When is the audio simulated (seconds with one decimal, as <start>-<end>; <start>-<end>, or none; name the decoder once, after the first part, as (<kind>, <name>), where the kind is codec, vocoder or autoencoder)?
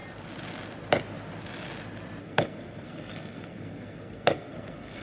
2.2-5.0 (codec, SNAC)